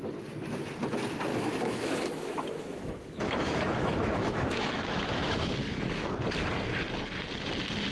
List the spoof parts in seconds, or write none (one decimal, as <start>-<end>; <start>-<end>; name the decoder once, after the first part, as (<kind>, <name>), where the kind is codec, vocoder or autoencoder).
1.3-6.0 (autoencoder, DAC-VAE)